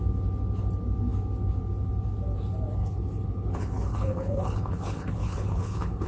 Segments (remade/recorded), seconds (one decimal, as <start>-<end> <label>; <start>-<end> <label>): 0.0-2.8 recorded; 2.8-6.1 remade